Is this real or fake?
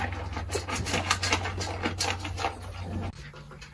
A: real